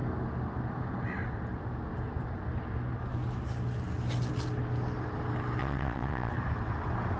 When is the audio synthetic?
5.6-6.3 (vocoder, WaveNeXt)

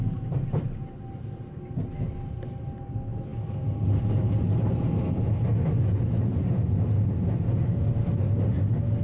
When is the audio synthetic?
none